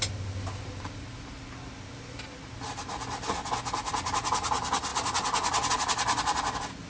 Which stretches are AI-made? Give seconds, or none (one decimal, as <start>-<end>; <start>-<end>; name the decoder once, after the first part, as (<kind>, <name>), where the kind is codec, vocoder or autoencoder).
none